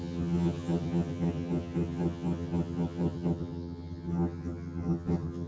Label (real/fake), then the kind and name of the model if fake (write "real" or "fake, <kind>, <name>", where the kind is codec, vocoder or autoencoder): fake, vocoder, HiFi-GAN